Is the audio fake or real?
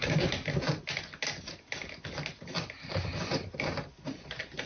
real